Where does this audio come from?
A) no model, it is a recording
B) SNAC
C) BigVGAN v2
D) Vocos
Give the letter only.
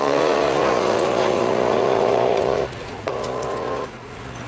D